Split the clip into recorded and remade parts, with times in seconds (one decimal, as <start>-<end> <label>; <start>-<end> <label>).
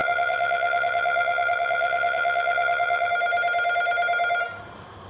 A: 0.0-3.1 remade; 3.1-5.1 recorded